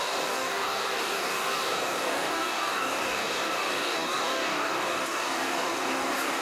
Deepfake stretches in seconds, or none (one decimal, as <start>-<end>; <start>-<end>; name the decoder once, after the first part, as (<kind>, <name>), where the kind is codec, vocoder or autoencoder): 0.0-6.4 (codec, DAC)